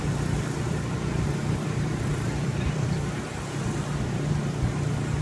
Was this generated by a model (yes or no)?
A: yes